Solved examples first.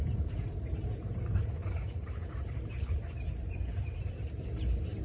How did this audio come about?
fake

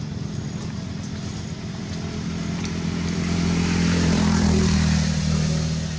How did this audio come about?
fake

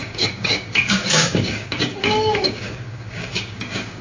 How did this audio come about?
fake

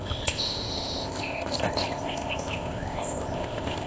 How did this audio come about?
fake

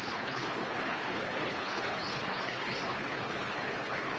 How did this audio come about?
fake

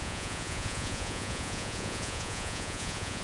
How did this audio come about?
fake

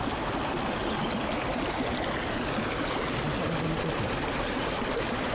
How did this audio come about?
real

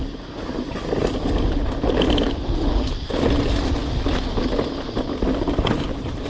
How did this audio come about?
real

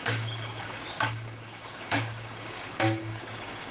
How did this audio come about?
fake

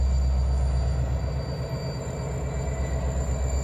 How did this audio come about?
real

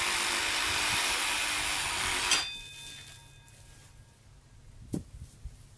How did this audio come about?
real